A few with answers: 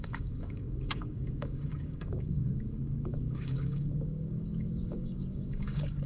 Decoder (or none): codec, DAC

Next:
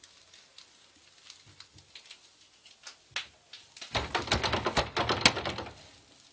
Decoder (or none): none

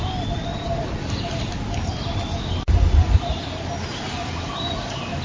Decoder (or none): none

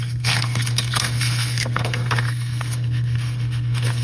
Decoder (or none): codec, SNAC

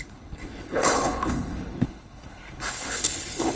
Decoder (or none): codec, HILCodec